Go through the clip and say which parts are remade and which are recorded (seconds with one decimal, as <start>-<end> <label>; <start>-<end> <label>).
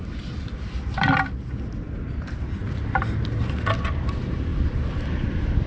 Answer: 0.0-5.7 recorded